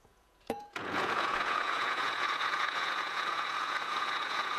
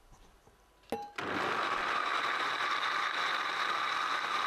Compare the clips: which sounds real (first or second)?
second